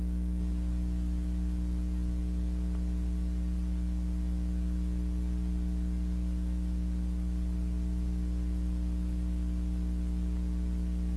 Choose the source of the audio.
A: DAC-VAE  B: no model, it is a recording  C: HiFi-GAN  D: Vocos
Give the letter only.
B